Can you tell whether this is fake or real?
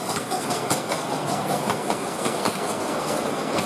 fake